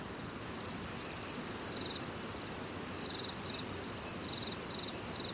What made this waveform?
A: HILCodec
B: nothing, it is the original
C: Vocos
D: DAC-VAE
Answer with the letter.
B